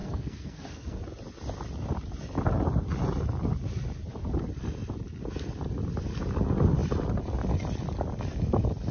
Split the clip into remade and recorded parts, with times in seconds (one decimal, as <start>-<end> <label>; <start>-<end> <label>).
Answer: 0.0-1.0 remade; 1.0-8.9 recorded